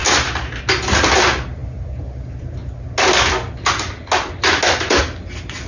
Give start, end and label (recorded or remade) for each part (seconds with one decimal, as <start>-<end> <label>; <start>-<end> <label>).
0.0-5.7 recorded